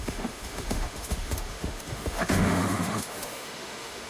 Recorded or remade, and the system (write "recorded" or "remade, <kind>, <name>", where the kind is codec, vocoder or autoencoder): remade, autoencoder, DAC-VAE